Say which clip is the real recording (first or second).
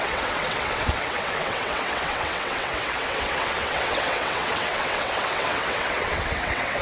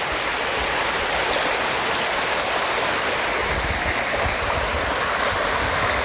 second